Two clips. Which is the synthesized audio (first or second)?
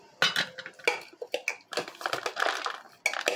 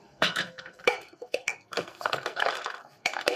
second